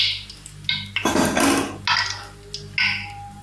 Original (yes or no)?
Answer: yes